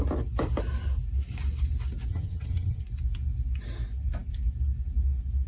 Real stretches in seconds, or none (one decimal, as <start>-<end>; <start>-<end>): 0.0-2.1; 2.8-5.5